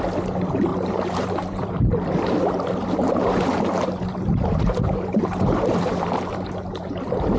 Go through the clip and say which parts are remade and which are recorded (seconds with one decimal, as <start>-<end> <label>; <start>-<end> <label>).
0.0-0.7 recorded; 0.7-1.9 remade; 1.9-2.8 recorded; 2.8-6.9 remade; 6.9-7.4 recorded